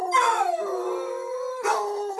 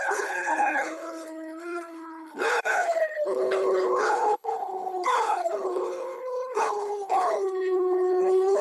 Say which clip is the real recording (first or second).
first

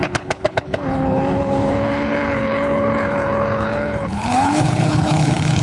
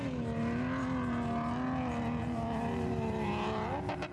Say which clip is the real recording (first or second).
second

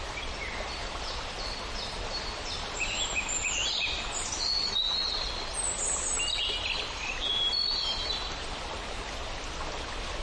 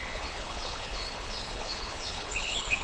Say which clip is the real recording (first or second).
first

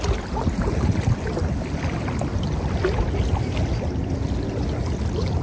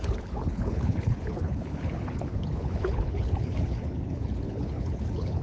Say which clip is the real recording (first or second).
first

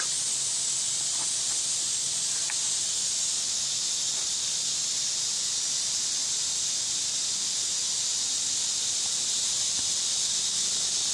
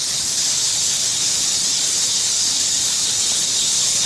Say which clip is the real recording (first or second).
first